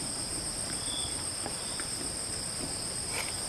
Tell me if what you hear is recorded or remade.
remade